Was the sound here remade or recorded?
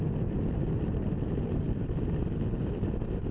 recorded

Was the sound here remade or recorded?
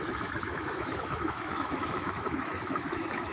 remade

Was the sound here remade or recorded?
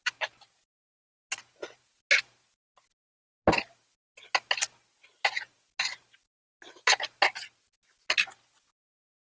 recorded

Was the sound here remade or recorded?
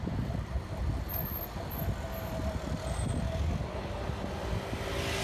recorded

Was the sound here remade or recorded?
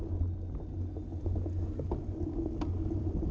recorded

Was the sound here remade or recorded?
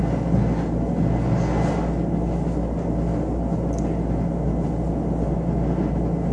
recorded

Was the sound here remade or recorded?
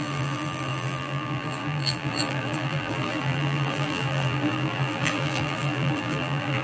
remade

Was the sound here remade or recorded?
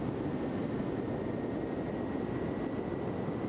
recorded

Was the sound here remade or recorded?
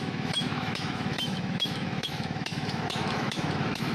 remade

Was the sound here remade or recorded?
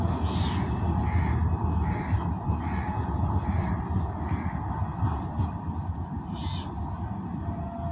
recorded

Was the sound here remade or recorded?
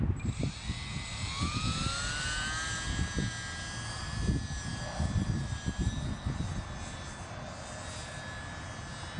recorded